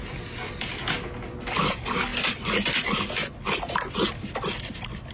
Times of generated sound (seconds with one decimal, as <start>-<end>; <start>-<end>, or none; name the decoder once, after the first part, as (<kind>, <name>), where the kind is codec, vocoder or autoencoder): none